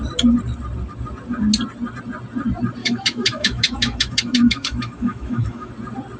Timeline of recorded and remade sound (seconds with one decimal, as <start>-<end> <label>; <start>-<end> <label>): 0.0-2.8 recorded; 2.8-5.7 remade; 5.7-6.2 recorded